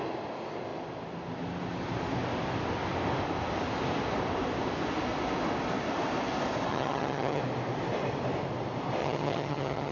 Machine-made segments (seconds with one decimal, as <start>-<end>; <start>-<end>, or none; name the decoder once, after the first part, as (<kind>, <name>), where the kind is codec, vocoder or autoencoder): 6.7-7.4 (vocoder, HiFi-GAN); 9.0-9.9